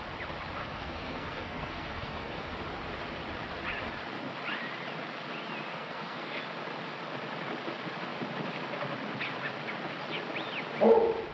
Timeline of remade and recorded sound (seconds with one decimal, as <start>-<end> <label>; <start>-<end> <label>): 0.0-0.6 recorded; 0.6-2.5 remade; 2.5-5.7 recorded; 5.7-6.4 remade; 6.4-11.3 recorded